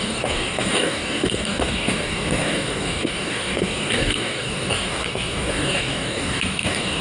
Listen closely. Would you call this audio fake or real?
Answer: fake